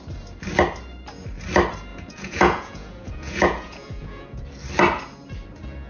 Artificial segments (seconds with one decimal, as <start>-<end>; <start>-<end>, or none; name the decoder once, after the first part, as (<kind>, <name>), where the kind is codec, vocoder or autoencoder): 1.9-4.4 (vocoder, Vocos)